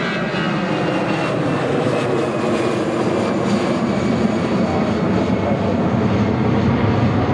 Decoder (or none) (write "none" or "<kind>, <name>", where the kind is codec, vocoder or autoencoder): none